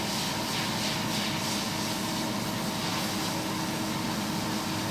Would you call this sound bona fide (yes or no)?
yes